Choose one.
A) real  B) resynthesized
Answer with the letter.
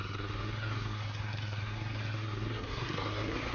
B